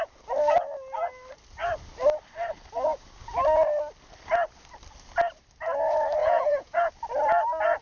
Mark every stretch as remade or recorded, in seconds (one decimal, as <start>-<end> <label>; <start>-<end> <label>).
0.0-6.2 recorded; 6.2-6.9 remade; 6.9-7.8 recorded